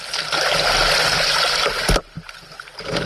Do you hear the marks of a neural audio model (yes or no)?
no